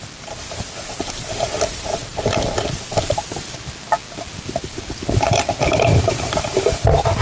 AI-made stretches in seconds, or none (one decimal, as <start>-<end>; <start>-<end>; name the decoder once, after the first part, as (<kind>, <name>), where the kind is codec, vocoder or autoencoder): none